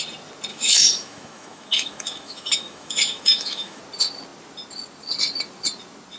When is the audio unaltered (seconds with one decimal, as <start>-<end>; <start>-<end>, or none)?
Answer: 0.0-0.5; 3.8-6.2